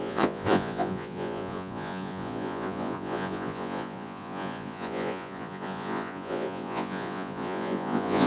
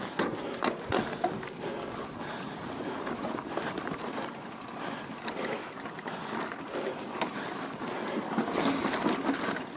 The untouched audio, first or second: second